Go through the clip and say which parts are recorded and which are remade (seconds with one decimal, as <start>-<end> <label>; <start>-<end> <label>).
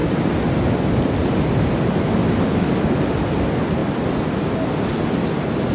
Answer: 0.0-5.7 recorded